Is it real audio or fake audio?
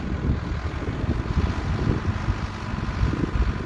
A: real